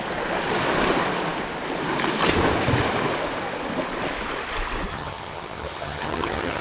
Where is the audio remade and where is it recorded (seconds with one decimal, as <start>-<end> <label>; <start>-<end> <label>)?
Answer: 0.0-4.9 recorded; 4.9-6.6 remade